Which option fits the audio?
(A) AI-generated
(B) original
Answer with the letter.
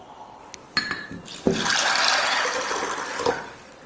B